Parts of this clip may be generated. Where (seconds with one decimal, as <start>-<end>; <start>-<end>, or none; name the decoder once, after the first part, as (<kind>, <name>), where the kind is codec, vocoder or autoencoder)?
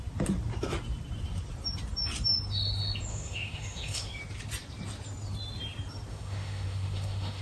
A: 3.1-4.2 (autoencoder, DAC-VAE); 6.1-7.4